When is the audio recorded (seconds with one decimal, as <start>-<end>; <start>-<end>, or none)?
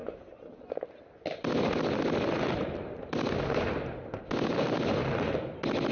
0.0-5.9